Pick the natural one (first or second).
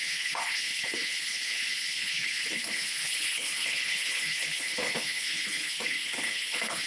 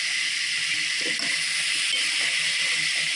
second